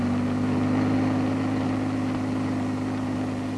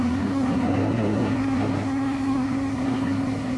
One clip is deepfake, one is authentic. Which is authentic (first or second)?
first